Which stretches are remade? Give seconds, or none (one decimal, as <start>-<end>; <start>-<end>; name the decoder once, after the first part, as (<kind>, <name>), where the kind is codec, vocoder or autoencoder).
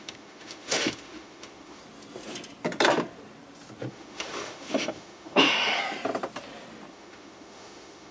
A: 0.0-1.8 (autoencoder, DAC-VAE); 3.9-5.8; 6.9-8.1